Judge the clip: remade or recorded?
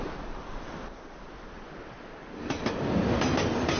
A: recorded